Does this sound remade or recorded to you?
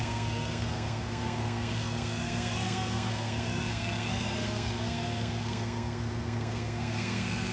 remade